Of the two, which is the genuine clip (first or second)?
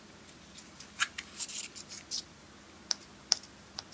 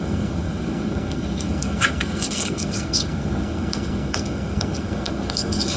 first